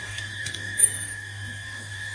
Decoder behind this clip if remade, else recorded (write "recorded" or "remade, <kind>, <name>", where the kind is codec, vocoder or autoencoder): remade, codec, DAC